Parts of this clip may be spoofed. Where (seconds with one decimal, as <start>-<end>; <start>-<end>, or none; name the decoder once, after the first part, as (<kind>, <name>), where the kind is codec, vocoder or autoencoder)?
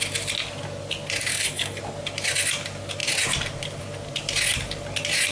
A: 1.3-1.8 (codec, SNAC)